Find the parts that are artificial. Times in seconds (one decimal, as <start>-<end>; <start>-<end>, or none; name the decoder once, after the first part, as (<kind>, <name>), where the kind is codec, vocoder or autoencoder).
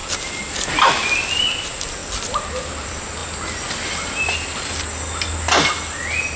none